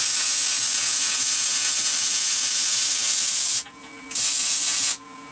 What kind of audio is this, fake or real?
real